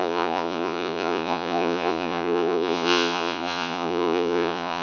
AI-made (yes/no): yes